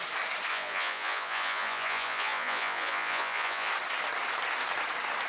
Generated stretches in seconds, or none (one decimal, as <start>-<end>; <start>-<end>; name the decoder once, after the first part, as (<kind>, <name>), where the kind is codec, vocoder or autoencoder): 0.5-3.7 (vocoder, Vocos)